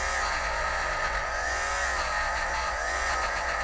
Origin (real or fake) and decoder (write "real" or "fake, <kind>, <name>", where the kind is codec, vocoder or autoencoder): fake, vocoder, Vocos